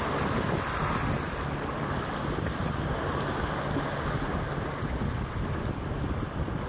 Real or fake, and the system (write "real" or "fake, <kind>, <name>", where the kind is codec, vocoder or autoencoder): real